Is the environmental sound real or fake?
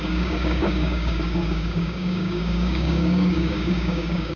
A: fake